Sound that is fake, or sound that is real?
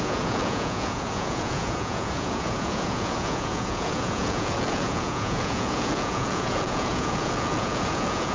fake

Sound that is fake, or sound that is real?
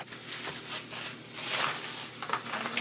real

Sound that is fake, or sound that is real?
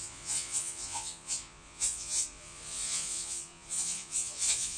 fake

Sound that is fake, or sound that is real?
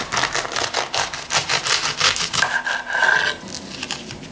real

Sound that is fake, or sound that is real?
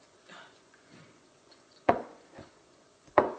fake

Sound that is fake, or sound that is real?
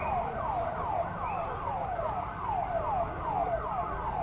real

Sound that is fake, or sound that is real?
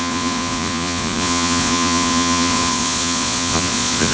fake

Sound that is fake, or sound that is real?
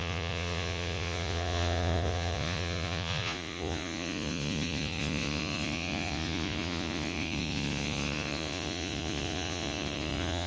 fake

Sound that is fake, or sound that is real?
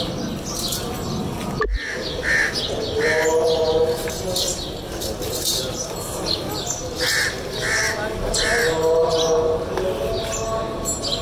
real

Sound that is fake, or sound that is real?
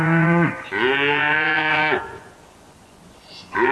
fake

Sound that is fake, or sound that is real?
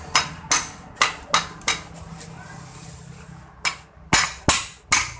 real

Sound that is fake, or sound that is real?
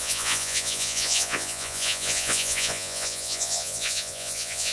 fake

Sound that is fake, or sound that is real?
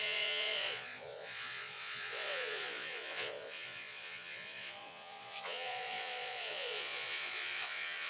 fake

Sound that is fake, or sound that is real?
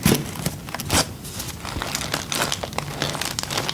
real